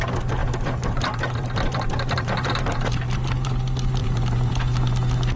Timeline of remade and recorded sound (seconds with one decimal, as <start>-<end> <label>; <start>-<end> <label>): 0.0-0.4 recorded; 0.4-3.6 remade; 3.6-4.0 recorded; 4.0-4.5 remade; 4.5-5.4 recorded